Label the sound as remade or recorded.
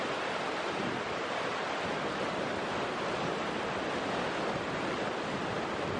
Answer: remade